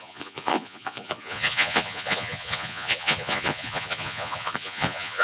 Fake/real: fake